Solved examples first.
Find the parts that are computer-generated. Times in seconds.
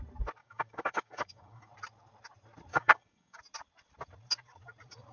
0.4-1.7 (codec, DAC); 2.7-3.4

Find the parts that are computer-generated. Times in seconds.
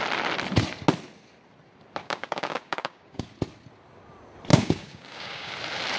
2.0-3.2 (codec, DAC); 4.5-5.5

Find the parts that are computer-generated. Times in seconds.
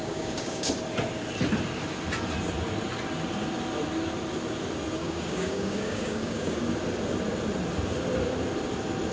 0.0-0.7 (codec, DAC); 5.0-6.6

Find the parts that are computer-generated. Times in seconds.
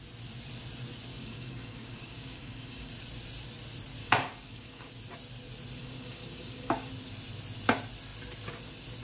1.1-2.9 (codec, DAC); 4.0-4.9; 5.8-6.9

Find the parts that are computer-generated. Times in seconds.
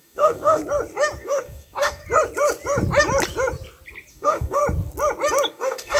0.0-0.6 (codec, DAC); 1.2-2.0; 4.1-4.6; 5.5-6.0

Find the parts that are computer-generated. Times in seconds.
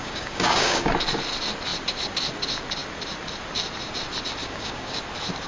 0.0-0.9 (codec, DAC); 4.4-5.0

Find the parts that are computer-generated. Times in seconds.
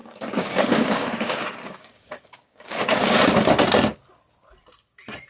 0.0-3.2 (codec, DAC)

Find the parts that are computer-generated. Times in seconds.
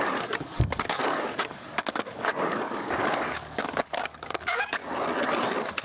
0.0-4.8 (codec, DAC)